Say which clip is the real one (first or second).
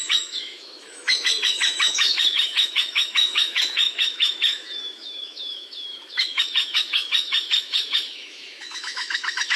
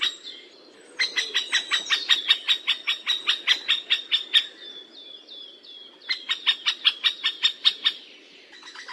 second